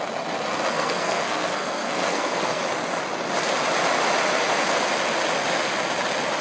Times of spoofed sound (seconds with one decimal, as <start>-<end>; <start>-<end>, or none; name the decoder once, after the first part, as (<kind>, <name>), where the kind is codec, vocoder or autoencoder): 0.7-2.6 (codec, SNAC)